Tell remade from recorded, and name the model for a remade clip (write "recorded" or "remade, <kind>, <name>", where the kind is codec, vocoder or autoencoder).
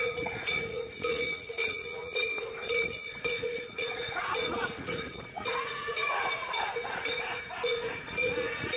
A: remade, vocoder, Vocos